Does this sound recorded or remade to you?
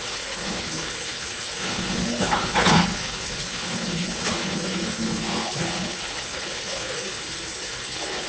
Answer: remade